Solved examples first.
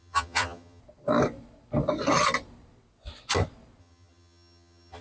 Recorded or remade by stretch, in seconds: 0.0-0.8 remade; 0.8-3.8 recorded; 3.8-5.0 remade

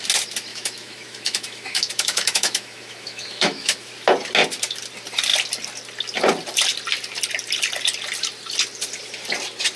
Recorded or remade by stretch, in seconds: 0.0-0.5 recorded; 0.5-3.9 remade; 3.9-9.8 recorded

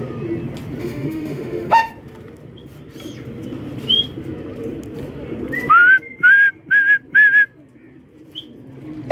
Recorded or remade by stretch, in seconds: 0.0-0.8 recorded; 0.8-1.9 remade; 1.9-9.1 recorded

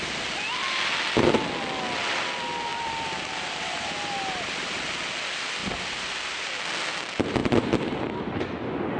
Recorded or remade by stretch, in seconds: 0.0-2.7 recorded; 2.7-4.8 remade; 4.8-5.6 recorded; 5.6-6.5 remade; 6.5-7.4 recorded; 7.4-7.9 remade; 7.9-9.0 recorded

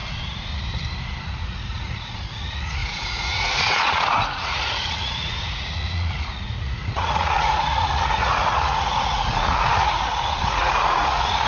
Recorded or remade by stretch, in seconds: 0.0-1.2 recorded; 1.2-11.5 remade

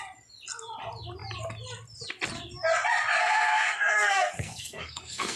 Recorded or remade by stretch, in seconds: 0.0-3.2 recorded; 3.2-5.4 remade

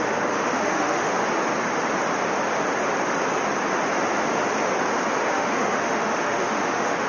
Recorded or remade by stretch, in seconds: 0.0-1.1 remade; 1.1-5.3 recorded; 5.3-7.1 remade